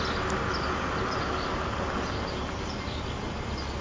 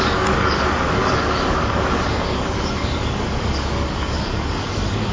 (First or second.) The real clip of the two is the first